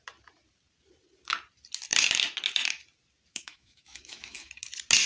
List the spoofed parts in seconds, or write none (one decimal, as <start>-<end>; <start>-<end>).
3.3-4.5